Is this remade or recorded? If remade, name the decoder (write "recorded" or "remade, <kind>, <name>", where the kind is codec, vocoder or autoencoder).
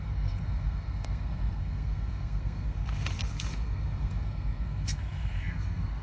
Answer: remade, codec, SNAC